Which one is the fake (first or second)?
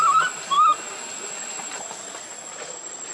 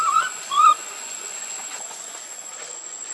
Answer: second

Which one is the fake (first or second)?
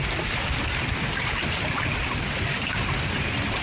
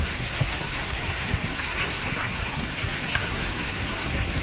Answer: second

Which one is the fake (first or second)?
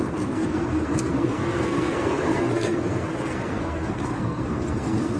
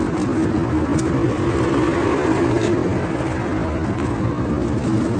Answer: first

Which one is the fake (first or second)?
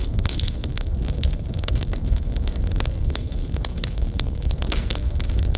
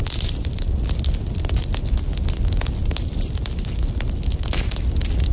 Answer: first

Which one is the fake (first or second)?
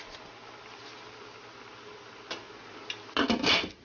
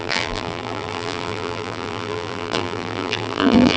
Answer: second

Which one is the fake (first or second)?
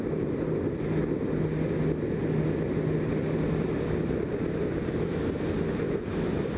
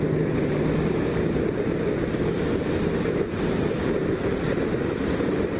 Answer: second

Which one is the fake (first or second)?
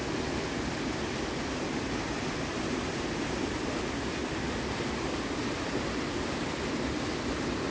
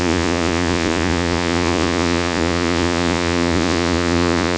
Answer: second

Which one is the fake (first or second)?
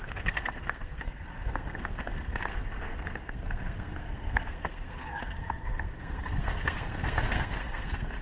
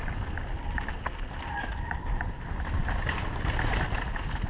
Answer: first